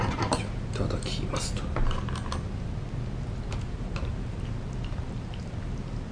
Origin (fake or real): real